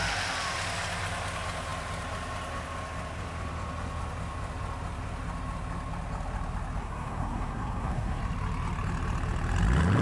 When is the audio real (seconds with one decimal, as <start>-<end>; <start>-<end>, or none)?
0.0-6.8; 8.2-10.0